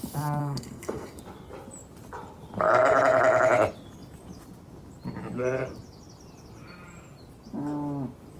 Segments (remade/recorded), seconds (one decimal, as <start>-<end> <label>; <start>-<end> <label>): 0.0-0.4 recorded; 0.4-1.2 remade; 1.2-8.4 recorded